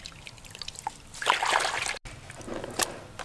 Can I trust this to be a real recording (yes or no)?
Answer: yes